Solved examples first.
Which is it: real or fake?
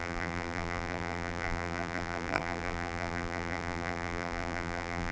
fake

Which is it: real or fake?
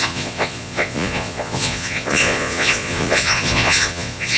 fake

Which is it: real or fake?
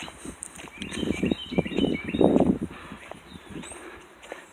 fake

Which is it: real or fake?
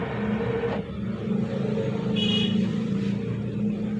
real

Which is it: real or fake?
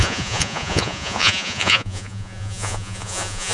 fake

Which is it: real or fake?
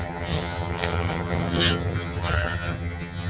fake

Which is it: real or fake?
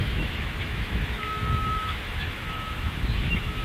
fake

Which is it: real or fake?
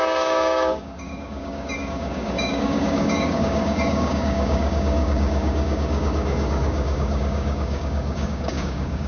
fake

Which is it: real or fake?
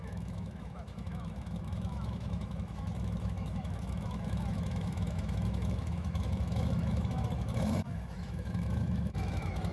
fake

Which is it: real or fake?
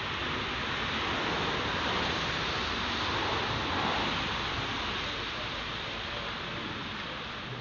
real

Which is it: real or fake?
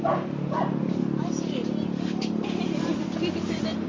real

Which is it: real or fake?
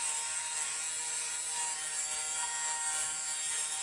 real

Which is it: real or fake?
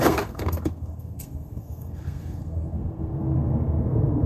fake